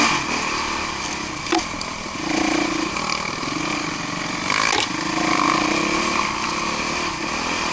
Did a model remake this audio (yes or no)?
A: no